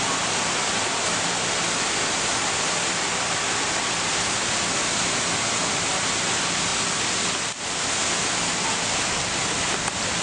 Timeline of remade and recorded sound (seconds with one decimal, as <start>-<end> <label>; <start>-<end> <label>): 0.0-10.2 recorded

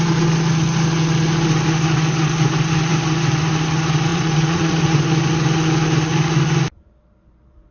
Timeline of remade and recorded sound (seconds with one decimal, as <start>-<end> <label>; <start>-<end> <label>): 0.0-4.1 recorded; 4.1-5.0 remade; 5.0-7.7 recorded

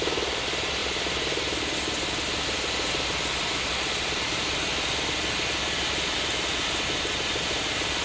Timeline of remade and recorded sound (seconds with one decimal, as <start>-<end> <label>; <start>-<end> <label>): 0.0-8.0 recorded

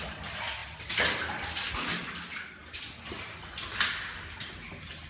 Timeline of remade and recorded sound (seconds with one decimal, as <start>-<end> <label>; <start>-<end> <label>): 0.0-5.1 recorded

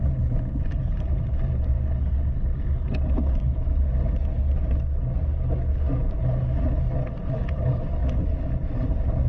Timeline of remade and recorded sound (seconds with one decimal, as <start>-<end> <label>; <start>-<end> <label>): 0.0-1.7 remade; 1.7-3.3 recorded; 3.3-3.8 remade; 3.8-7.2 recorded; 7.2-8.0 remade; 8.0-8.9 recorded; 8.9-9.3 remade